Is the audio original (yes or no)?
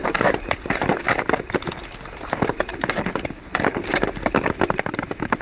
yes